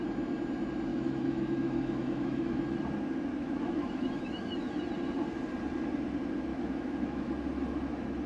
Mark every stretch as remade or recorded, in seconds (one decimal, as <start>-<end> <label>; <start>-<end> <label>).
0.0-0.9 recorded; 0.9-2.6 remade; 2.6-3.3 recorded; 3.3-4.8 remade; 4.8-6.5 recorded; 6.5-7.3 remade; 7.3-8.3 recorded